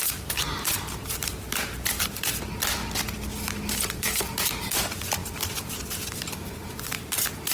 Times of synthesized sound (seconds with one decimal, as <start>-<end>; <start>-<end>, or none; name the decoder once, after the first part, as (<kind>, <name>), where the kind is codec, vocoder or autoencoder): 0.0-2.8 (vocoder, BigVGAN v2); 3.7-7.5